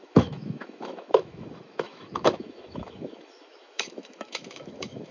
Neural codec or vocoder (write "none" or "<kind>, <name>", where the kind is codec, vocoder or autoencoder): autoencoder, DAC-VAE